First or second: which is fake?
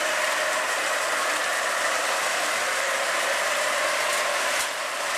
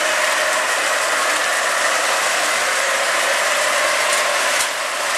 first